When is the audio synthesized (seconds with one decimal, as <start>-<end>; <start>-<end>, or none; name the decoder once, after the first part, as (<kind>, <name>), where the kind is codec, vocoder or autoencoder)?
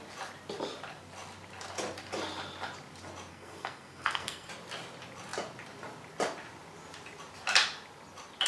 3.3-4.5 (codec, SNAC)